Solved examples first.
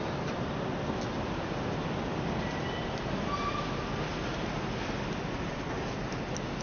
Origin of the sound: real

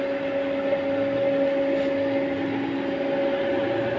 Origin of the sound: real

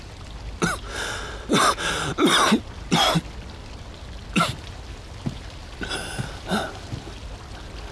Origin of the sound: real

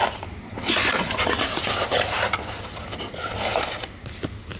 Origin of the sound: real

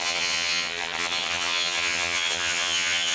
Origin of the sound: fake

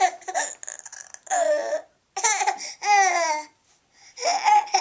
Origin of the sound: real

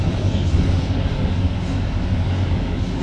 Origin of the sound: fake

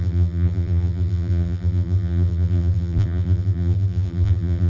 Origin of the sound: fake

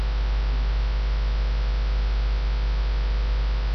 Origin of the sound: real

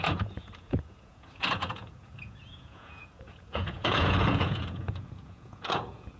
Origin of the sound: fake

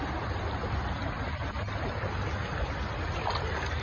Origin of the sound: real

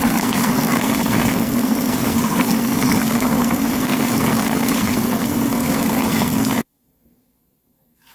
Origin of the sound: fake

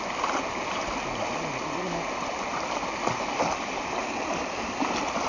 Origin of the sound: real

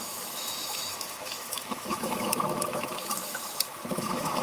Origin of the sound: fake